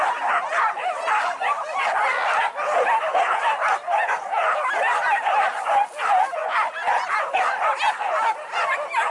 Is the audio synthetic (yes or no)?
no